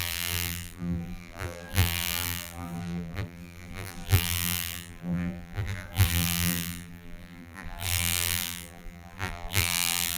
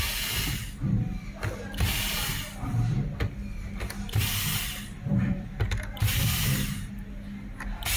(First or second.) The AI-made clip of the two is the first